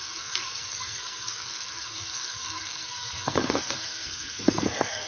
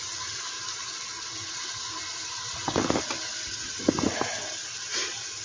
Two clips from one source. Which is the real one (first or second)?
second